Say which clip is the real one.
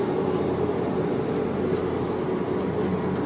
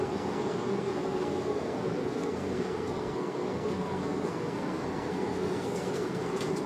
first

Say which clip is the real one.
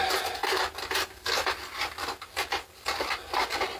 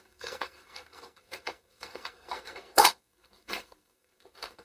first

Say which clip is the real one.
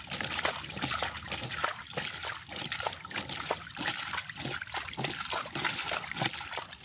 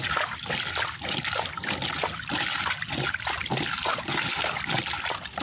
second